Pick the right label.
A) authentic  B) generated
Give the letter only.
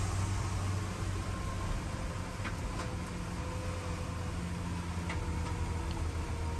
A